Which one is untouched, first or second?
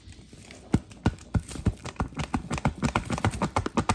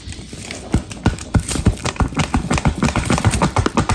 first